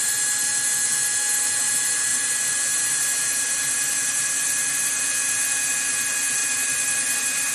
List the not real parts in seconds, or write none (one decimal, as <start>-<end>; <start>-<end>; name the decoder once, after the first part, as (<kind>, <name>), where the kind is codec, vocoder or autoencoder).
2.1-5.0 (vocoder, BigVGAN v2); 6.4-7.5